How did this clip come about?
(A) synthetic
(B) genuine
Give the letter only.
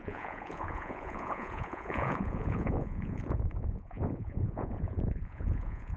A